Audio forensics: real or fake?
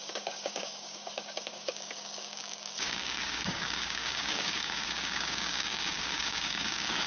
fake